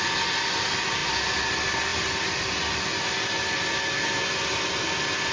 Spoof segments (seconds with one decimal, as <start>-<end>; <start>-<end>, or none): none